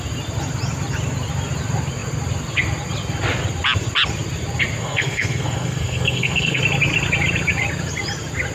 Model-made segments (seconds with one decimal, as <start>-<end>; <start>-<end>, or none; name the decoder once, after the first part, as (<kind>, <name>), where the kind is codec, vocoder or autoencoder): 4.8-6.6 (codec, SNAC)

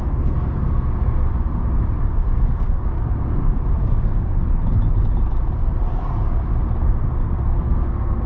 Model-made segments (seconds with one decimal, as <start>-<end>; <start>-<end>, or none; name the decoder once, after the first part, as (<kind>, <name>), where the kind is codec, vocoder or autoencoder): 0.0-1.3 (codec, SNAC); 2.0-4.4; 7.2-8.3

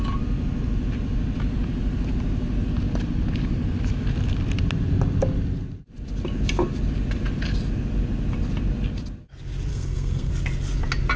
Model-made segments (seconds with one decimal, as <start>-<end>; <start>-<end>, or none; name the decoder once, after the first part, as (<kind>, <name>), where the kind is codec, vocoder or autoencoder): 9.7-10.3 (codec, SNAC)

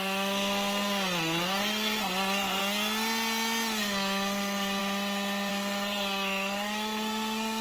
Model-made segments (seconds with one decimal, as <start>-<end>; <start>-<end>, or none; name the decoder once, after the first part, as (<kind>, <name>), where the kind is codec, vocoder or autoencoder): 0.0-2.6 (codec, SNAC); 3.8-4.8; 5.5-7.6

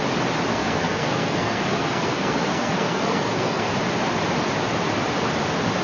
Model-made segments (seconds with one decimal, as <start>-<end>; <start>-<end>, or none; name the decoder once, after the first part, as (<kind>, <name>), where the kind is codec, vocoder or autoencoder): 0.5-3.7 (codec, SNAC)

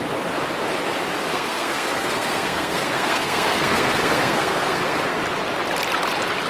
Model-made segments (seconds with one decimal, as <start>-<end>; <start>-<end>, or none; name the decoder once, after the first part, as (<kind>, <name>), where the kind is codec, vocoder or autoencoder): 1.3-5.2 (codec, SNAC)

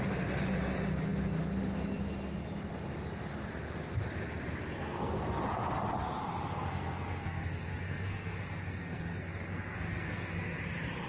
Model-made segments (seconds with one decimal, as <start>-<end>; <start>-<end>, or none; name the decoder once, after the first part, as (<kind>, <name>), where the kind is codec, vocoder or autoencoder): 4.8-5.4 (codec, SNAC); 6.5-10.6

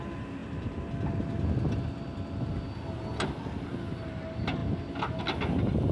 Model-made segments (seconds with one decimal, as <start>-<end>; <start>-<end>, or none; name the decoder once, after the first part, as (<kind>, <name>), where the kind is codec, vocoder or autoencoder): none